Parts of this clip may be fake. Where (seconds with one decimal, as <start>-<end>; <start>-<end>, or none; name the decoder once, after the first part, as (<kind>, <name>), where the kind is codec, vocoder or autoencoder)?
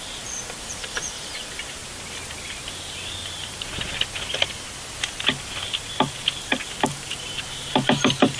0.0-1.8 (vocoder, BigVGAN v2); 6.8-8.4